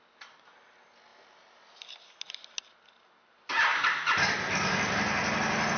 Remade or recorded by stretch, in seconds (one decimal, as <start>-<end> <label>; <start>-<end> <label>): 0.0-5.8 recorded